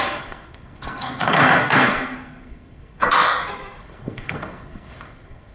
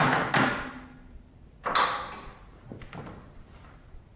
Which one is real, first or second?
second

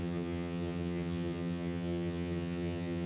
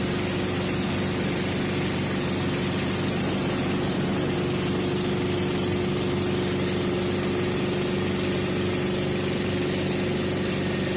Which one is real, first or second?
second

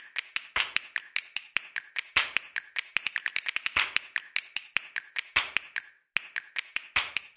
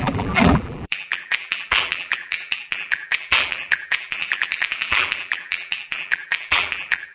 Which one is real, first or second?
first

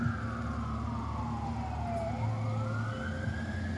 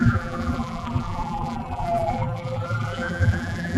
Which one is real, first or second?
first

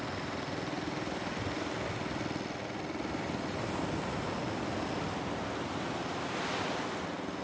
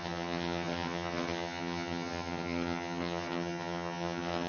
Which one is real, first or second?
first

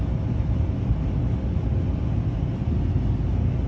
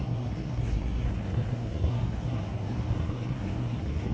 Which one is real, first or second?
first